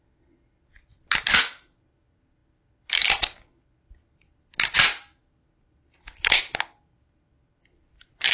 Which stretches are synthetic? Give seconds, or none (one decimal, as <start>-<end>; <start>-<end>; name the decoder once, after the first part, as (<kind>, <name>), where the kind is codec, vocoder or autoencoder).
none